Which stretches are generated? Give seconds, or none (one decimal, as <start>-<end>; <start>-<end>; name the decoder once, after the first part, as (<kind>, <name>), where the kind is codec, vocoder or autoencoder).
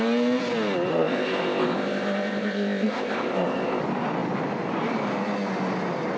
0.9-3.8 (codec, ZipCodec)